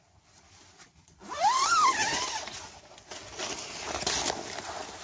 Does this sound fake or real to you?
real